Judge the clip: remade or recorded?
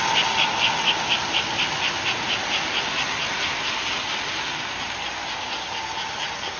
recorded